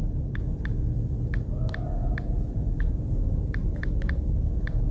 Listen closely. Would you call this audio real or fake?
real